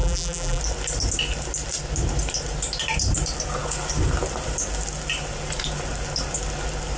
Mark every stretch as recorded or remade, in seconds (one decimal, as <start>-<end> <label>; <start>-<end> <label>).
0.0-0.6 remade; 0.6-7.0 recorded